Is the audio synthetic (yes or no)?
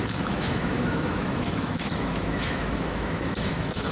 yes